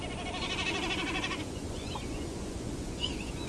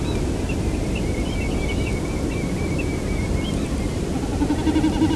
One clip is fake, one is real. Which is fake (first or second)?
first